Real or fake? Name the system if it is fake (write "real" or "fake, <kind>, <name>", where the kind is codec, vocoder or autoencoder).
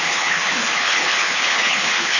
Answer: fake, codec, HILCodec